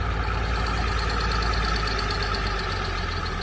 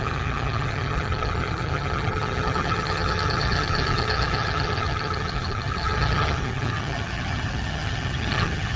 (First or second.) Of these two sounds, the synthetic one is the second